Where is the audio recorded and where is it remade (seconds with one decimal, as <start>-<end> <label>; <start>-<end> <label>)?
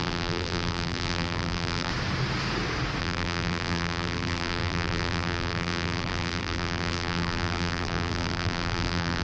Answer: 0.0-1.9 remade; 1.9-3.0 recorded; 3.0-9.2 remade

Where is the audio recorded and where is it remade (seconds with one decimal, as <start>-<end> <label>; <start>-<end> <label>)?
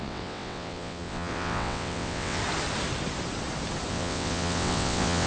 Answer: 0.0-2.4 remade; 2.4-3.9 recorded; 3.9-5.3 remade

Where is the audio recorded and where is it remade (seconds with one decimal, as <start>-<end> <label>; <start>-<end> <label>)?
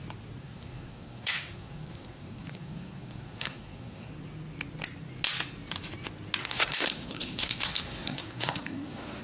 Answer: 0.0-0.4 recorded; 0.4-4.1 remade; 4.1-6.4 recorded; 6.4-9.2 remade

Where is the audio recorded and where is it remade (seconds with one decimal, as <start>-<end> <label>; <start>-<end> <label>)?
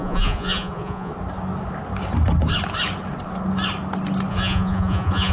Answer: 0.0-1.1 remade; 1.1-4.3 recorded; 4.3-5.3 remade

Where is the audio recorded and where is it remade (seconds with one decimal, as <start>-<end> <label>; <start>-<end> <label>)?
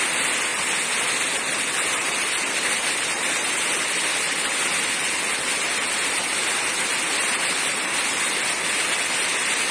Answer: 0.0-9.7 recorded